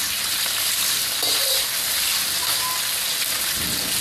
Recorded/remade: recorded